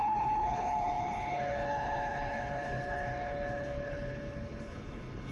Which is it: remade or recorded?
remade